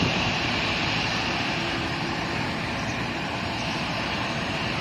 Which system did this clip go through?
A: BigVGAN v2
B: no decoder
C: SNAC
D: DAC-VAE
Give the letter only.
A